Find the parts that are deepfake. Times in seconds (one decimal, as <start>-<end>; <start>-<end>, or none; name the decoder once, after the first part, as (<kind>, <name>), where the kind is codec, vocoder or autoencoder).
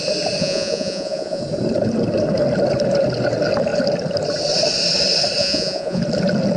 0.4-1.4 (vocoder, Vocos); 5.4-6.0